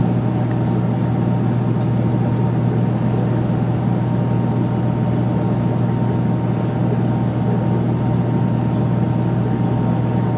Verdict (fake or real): real